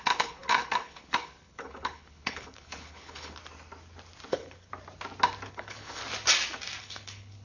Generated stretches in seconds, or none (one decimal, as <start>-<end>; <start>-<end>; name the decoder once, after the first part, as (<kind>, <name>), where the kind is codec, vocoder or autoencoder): 0.0-3.4 (codec, HILCodec); 4.3-4.7; 5.5-6.0; 6.8-7.4